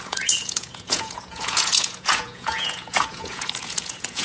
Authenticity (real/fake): fake